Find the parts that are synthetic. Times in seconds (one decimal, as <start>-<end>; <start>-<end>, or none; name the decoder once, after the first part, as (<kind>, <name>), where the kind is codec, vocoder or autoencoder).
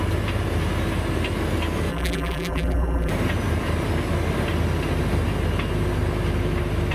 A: 1.9-3.1 (vocoder, BigVGAN v2)